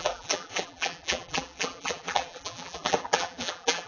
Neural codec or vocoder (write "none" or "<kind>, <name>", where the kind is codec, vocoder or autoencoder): vocoder, BigVGAN v2